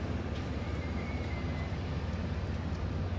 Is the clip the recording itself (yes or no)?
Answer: yes